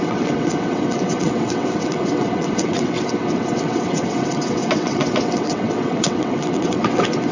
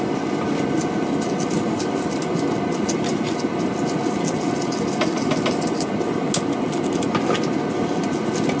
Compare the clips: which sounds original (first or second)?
second